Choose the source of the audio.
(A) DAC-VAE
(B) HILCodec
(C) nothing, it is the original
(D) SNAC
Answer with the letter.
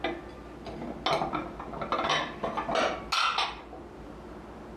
C